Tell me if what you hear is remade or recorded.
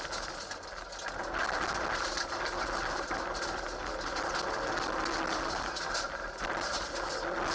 recorded